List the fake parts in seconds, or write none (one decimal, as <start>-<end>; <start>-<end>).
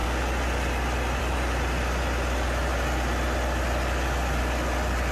none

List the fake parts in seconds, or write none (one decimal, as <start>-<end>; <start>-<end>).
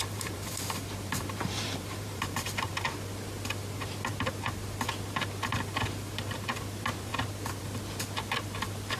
0.0-2.7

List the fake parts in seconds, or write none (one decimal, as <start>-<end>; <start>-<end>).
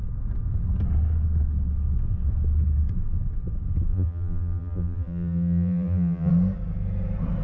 3.9-6.3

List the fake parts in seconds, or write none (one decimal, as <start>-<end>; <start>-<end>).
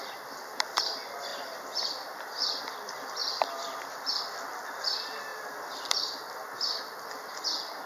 0.0-3.2; 4.2-7.9